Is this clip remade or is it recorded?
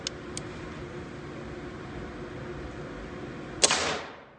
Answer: recorded